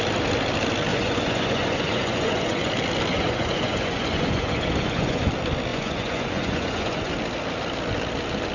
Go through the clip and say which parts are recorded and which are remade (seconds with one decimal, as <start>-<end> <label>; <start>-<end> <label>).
0.0-0.9 recorded; 0.9-2.7 remade; 2.7-3.1 recorded; 3.1-5.3 remade; 5.3-5.7 recorded; 5.7-7.1 remade; 7.1-8.5 recorded